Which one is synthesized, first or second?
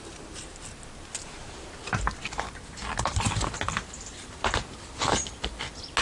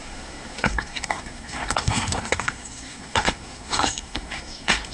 second